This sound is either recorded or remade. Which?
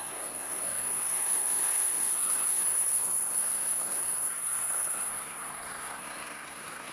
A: remade